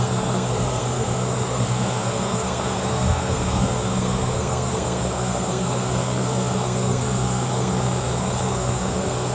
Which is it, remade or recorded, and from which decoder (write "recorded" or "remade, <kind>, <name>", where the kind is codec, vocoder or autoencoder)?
remade, codec, SNAC